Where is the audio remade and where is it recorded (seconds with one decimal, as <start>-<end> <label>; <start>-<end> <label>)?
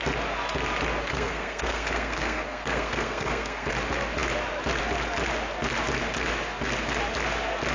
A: 0.0-1.1 recorded; 1.1-3.7 remade; 3.7-7.7 recorded